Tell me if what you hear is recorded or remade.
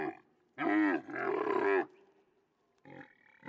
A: recorded